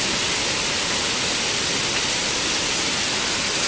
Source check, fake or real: real